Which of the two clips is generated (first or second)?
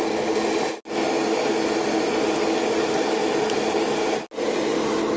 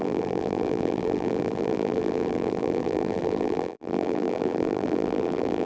second